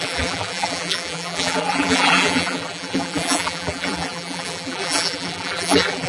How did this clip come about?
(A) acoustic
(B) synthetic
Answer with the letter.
B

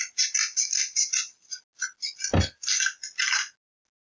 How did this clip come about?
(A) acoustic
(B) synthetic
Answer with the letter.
A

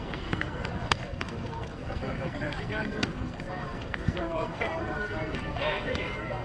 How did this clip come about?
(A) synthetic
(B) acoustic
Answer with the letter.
A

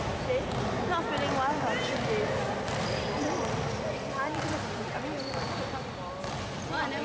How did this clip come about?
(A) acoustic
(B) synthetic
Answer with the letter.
A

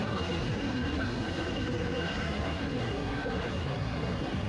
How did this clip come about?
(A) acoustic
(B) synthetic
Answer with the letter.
B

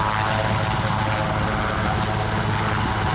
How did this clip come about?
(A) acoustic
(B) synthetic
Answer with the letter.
A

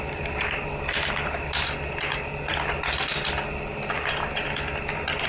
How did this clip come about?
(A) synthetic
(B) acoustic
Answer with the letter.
B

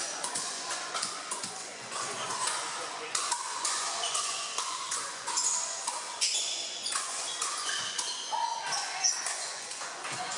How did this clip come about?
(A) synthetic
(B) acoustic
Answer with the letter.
A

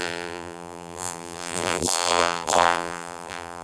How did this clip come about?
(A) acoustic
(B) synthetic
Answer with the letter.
B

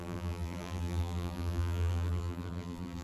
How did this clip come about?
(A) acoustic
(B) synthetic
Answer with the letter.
B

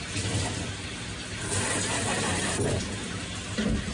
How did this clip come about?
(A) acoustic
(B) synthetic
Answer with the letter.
B